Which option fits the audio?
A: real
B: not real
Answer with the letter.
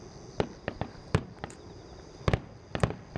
A